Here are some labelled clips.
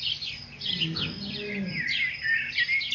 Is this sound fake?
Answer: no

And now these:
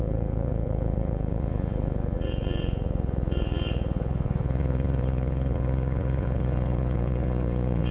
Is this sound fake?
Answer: yes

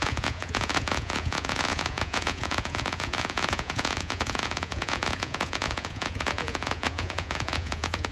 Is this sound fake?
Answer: yes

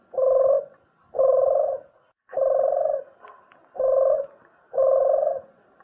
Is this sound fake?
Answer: no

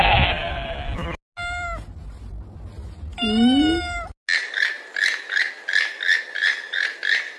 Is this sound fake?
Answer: no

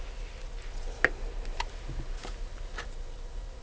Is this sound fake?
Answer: no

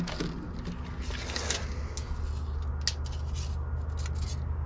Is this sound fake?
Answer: no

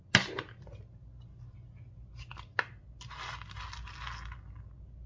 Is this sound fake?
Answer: no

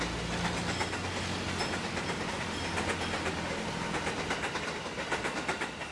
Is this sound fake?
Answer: no